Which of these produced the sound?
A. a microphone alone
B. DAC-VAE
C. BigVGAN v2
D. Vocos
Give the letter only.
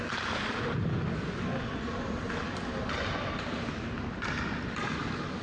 A